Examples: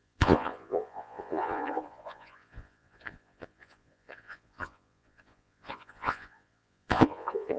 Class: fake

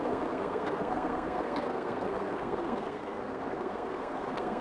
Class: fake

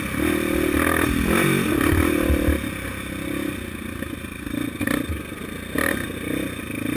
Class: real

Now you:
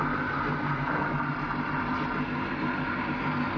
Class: real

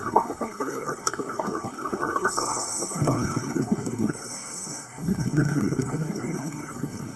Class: fake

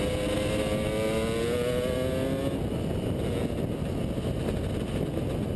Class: real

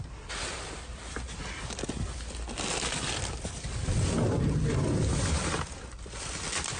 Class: real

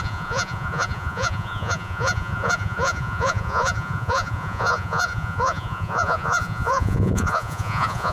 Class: fake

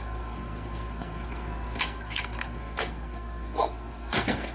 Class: fake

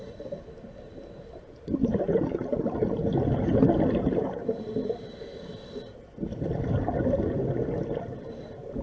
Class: real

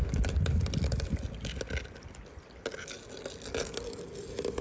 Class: real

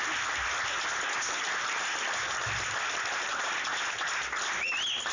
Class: real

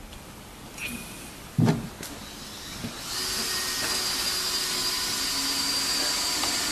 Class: real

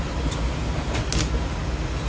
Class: real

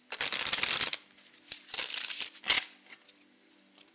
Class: real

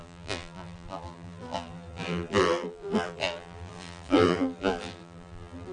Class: fake